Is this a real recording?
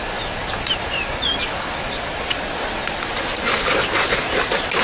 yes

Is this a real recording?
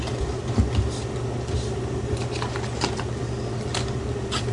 yes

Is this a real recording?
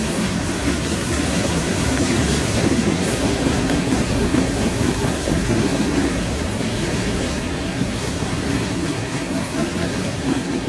no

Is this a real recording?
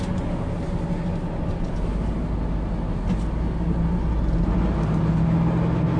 yes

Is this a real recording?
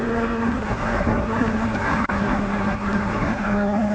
no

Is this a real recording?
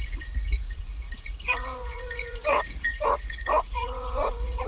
no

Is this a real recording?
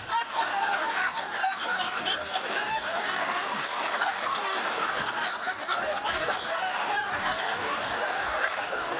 no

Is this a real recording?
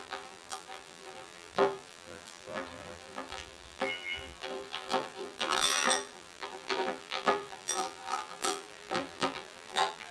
no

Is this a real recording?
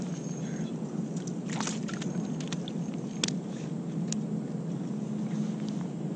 yes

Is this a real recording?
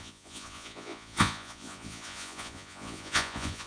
no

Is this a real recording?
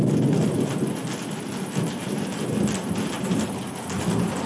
yes